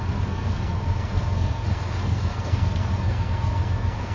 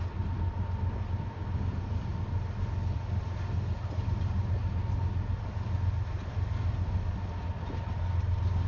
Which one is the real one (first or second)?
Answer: second